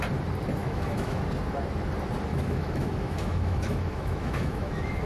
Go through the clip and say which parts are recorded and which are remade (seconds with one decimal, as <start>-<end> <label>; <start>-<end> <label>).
0.0-0.6 recorded; 0.6-1.2 remade; 1.2-2.3 recorded; 2.3-5.1 remade